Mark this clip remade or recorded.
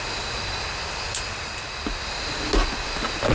recorded